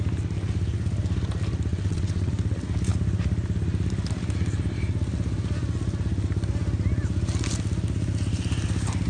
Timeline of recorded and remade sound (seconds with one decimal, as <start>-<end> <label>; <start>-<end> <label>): 0.0-1.7 recorded; 1.7-2.3 remade; 2.3-9.1 recorded